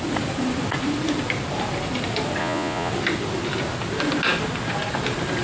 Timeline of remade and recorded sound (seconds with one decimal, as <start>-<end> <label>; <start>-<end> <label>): 0.0-2.4 recorded; 2.4-2.9 remade; 2.9-5.4 recorded